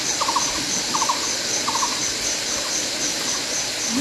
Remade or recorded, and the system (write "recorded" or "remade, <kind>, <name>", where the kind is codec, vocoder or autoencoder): recorded